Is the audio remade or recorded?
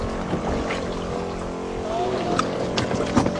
recorded